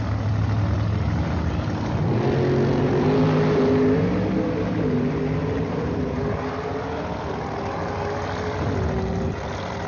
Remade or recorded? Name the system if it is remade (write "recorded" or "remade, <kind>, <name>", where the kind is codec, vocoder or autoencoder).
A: recorded